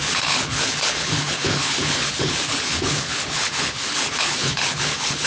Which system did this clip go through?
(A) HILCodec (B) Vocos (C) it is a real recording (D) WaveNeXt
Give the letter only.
A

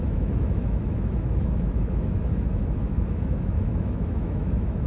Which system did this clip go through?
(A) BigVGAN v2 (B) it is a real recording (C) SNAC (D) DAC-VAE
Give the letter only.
D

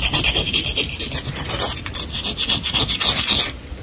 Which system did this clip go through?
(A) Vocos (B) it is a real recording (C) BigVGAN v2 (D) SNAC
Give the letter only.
B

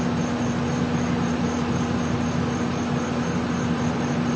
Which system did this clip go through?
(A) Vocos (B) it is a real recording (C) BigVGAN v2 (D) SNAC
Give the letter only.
B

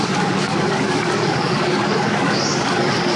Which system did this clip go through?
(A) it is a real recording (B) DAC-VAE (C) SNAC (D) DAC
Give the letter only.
D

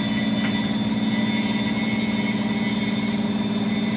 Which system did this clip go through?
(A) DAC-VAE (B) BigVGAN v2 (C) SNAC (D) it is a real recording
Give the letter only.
D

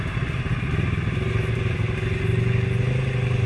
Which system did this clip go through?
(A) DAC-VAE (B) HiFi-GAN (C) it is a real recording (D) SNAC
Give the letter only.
C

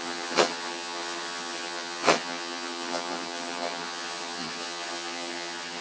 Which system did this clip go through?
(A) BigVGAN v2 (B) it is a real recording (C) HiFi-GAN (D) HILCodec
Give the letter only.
C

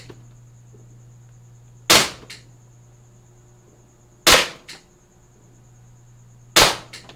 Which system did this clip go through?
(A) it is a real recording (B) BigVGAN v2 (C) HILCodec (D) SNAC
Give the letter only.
A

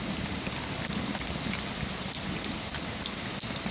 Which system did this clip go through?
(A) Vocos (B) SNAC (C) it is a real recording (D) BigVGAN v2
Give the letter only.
C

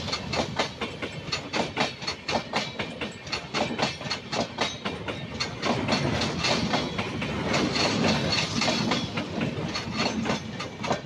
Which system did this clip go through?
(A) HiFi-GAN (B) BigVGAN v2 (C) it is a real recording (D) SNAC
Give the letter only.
C